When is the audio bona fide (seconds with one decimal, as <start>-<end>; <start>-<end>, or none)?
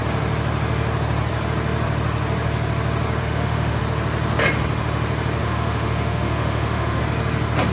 0.0-3.2; 3.8-5.4; 7.0-7.7